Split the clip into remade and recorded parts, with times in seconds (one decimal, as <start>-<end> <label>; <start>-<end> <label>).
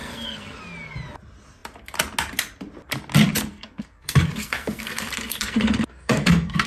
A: 0.0-0.6 remade; 0.6-3.5 recorded; 3.5-6.7 remade